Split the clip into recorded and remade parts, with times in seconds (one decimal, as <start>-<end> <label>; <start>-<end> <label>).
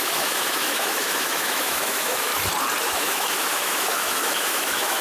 0.0-2.3 remade; 2.3-2.8 recorded; 2.8-5.0 remade